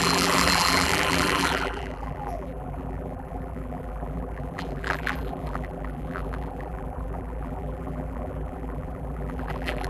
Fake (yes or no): yes